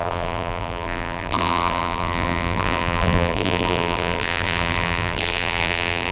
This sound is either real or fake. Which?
fake